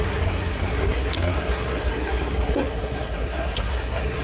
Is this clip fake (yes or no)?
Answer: yes